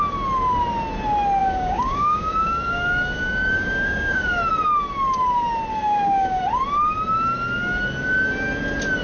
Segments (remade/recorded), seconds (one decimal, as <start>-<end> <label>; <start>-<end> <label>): 0.0-1.4 recorded; 1.4-4.5 remade; 4.5-5.7 recorded; 5.7-6.4 remade; 6.4-9.0 recorded